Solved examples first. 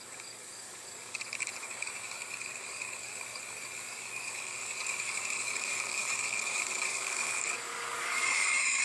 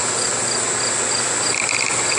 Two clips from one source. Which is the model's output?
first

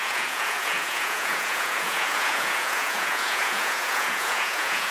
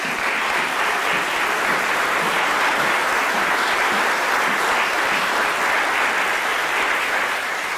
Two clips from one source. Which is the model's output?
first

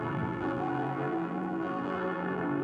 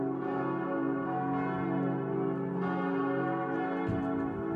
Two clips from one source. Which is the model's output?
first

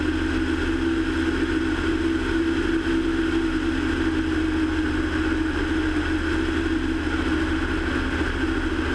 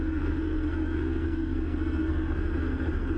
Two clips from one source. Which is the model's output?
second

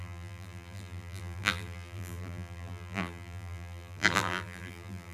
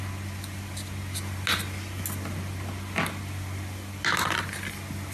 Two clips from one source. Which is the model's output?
first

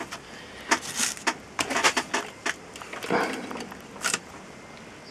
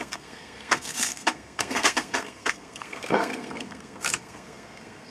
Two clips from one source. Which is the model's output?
second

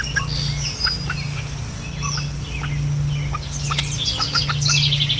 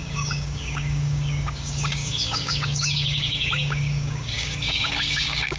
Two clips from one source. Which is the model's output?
second